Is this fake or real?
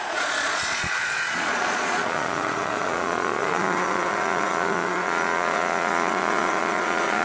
fake